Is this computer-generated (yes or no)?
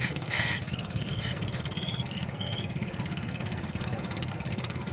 yes